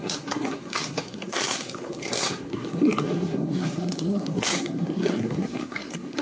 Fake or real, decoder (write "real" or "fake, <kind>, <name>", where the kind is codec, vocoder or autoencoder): fake, codec, SNAC